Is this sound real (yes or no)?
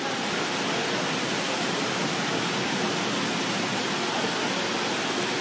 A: yes